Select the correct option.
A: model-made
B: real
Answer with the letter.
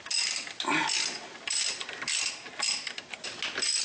B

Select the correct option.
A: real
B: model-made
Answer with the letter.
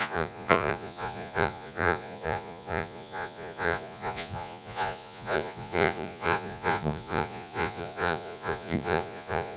B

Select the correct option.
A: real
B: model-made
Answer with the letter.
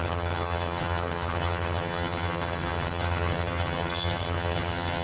B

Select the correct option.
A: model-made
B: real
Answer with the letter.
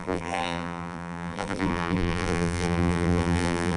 A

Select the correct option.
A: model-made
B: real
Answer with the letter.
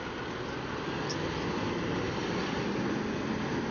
B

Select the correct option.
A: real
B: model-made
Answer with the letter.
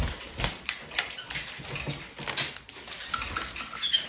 A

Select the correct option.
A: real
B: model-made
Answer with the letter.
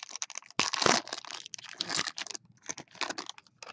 A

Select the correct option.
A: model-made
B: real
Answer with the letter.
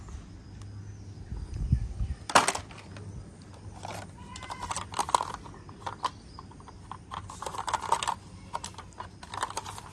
B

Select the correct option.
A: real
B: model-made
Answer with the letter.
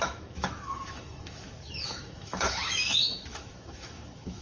B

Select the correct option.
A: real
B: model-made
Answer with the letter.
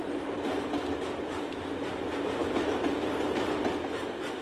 A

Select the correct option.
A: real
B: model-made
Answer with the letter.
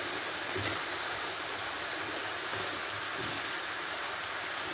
A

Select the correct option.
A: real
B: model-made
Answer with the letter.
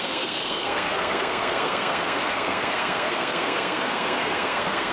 B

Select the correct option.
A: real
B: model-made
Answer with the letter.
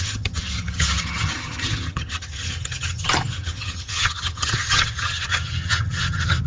B